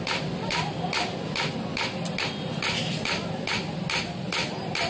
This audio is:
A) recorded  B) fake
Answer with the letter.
A